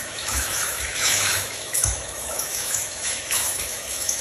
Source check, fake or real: fake